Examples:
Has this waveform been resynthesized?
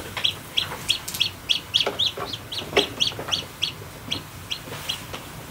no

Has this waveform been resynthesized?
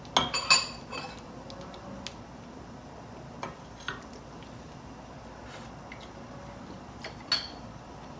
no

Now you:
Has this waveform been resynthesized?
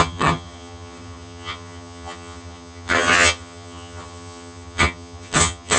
yes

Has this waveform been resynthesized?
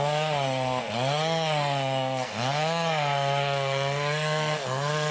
yes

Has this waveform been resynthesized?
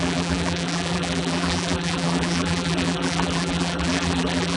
yes